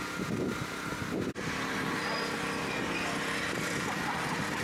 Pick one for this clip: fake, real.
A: real